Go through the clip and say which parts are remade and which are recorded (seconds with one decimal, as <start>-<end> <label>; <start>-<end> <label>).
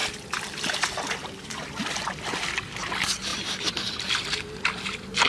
0.0-2.4 remade; 2.4-5.3 recorded